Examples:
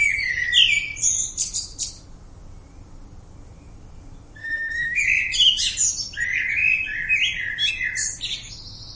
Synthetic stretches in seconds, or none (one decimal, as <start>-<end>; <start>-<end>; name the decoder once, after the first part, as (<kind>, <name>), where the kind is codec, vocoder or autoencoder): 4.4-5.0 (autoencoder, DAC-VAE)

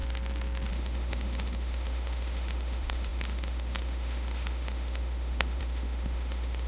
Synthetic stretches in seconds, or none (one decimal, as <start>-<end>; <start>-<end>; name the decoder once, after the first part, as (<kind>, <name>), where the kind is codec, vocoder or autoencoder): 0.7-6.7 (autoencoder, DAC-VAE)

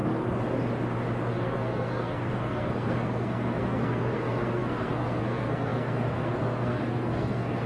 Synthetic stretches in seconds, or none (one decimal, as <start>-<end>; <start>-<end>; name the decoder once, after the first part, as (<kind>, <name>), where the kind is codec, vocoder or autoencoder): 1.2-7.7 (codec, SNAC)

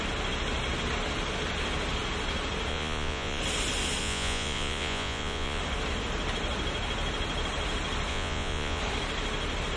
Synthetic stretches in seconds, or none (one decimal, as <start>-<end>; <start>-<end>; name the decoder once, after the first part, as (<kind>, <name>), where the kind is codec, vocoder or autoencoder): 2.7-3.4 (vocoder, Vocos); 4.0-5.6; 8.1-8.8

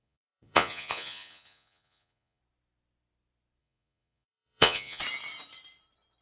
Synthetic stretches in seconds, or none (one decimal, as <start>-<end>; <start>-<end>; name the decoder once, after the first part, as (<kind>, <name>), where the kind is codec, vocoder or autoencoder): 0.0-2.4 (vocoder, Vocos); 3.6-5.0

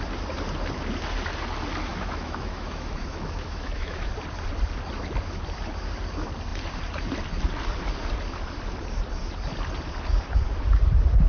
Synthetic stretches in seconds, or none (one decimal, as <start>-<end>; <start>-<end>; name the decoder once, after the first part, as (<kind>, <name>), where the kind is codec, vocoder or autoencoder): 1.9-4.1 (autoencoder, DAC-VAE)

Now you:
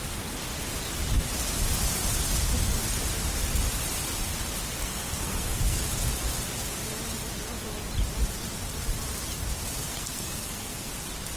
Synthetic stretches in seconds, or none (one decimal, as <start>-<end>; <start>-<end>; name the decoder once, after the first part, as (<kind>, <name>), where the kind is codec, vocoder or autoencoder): 4.8-5.8 (codec, SNAC); 9.9-10.9